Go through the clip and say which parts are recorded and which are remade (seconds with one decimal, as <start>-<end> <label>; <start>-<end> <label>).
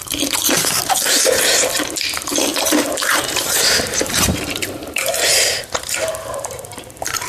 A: 0.0-7.3 remade